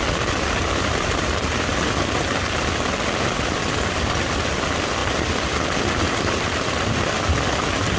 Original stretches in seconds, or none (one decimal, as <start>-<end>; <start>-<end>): 0.0-8.0